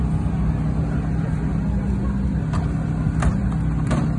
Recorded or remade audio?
recorded